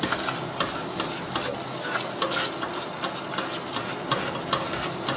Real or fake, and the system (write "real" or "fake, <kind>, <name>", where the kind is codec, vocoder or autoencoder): real